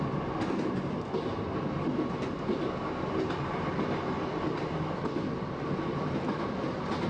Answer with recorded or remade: recorded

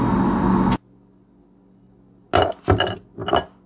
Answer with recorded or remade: recorded